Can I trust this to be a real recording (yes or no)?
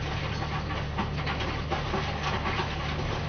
yes